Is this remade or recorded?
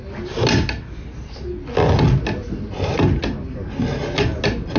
recorded